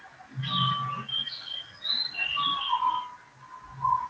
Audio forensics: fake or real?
real